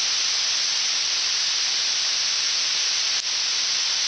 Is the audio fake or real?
real